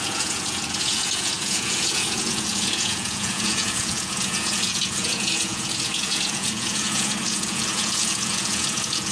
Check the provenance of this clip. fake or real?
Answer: fake